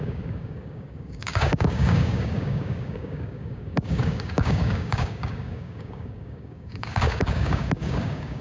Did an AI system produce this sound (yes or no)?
yes